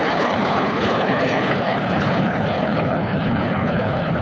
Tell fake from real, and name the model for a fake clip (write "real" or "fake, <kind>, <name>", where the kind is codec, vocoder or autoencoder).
fake, codec, HILCodec